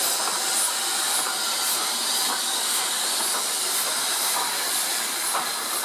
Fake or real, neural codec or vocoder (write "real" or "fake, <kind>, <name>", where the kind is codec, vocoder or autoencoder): fake, vocoder, BigVGAN v2